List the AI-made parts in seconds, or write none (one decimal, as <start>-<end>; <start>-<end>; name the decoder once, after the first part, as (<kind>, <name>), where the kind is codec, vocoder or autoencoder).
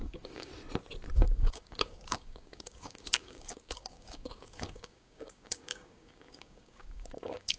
0.0-0.5 (codec, DAC); 1.1-7.6